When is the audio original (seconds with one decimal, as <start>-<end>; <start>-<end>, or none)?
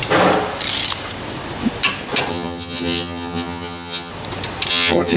0.0-2.3; 4.1-4.7